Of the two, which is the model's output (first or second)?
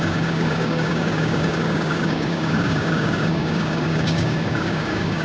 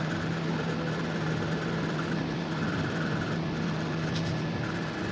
first